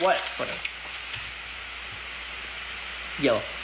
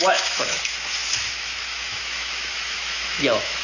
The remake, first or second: second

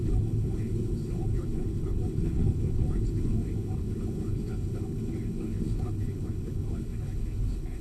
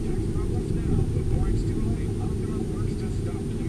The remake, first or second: first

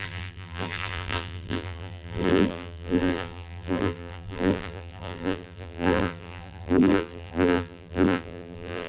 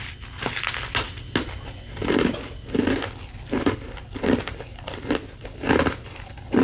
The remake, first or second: first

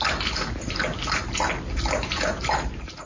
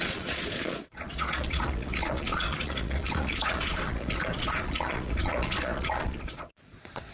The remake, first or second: second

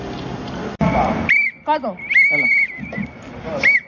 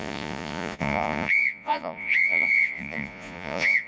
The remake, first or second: second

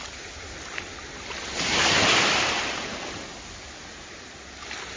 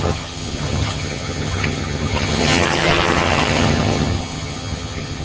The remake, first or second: second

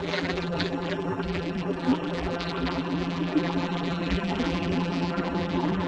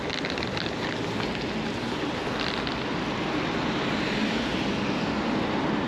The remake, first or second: first